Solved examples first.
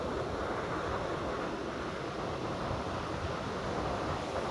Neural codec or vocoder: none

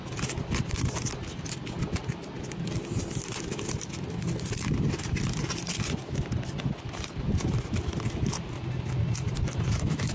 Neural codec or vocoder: none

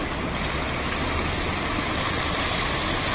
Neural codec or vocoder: none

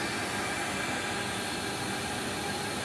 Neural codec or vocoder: none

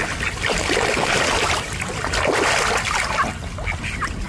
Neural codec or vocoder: none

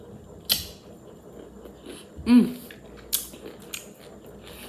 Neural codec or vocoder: none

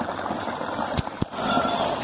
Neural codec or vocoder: none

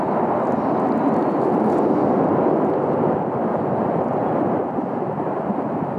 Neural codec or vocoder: none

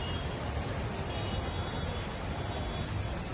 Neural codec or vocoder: none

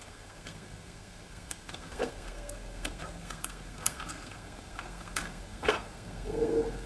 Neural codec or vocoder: codec, SNAC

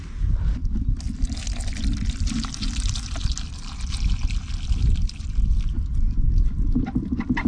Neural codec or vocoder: none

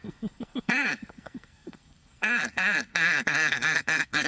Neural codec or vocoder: codec, SNAC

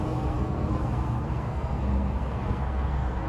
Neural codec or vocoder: codec, SNAC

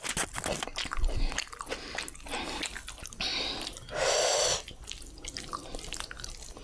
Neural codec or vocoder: none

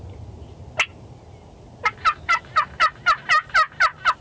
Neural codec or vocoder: none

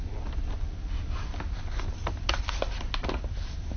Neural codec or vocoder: none